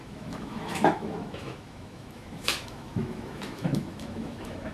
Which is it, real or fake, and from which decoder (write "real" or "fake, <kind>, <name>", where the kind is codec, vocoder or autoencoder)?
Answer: fake, autoencoder, DAC-VAE